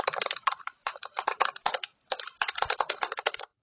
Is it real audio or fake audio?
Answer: fake